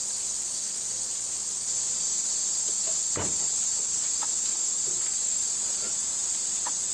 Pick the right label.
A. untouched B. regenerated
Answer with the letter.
A